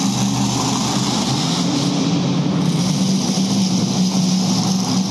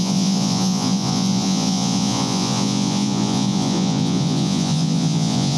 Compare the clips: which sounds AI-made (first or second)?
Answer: second